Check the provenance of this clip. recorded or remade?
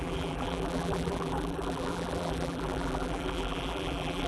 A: remade